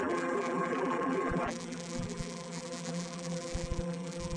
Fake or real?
fake